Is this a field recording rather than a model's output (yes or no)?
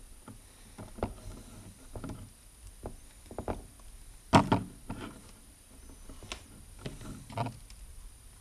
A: yes